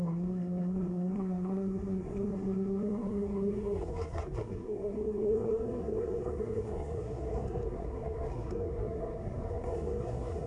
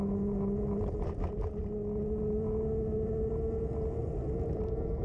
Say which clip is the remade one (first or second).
first